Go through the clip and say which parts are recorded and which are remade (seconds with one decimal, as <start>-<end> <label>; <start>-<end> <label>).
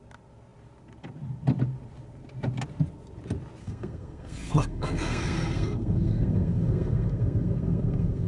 0.0-3.6 recorded; 3.6-8.3 remade